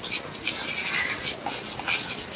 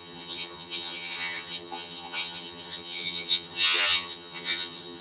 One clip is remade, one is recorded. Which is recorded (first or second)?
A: first